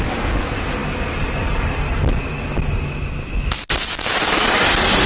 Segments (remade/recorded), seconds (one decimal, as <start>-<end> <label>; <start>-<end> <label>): 0.0-5.1 recorded